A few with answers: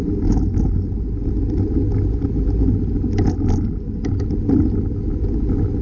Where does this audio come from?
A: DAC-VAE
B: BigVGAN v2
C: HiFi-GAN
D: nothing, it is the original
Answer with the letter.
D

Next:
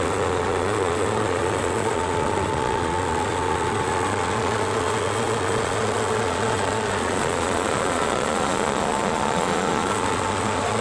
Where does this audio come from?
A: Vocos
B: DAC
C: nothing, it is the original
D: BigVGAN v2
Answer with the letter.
A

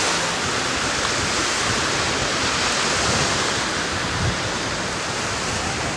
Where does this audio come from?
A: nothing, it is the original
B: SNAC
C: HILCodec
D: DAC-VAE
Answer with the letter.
A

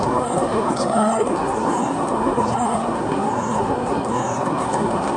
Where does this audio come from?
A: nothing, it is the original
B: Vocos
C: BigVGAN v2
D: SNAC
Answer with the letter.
D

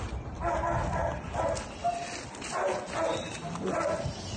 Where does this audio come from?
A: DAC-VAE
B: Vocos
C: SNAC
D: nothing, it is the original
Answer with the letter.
D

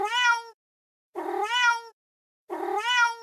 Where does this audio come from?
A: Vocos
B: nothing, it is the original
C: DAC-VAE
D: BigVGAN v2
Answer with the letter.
B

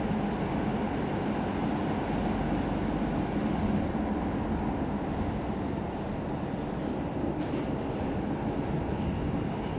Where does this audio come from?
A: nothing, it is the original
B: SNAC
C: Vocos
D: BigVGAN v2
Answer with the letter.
A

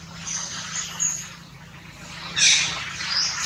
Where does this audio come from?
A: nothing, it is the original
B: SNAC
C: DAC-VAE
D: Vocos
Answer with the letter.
A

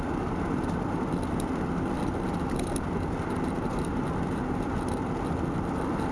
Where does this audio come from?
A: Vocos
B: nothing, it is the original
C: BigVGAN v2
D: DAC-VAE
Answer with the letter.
B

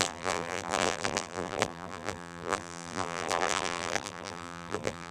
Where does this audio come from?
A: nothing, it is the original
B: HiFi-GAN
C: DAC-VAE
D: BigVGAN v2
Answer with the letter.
D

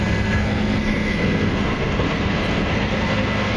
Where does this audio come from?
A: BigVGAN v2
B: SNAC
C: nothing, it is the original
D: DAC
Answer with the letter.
B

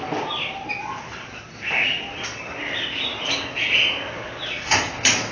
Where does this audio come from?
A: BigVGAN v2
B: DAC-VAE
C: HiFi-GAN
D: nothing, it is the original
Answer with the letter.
D